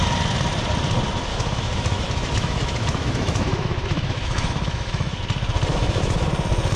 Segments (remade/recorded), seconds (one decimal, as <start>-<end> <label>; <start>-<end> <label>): 0.0-1.3 recorded; 1.3-5.2 remade; 5.2-5.7 recorded; 5.7-6.3 remade; 6.3-6.8 recorded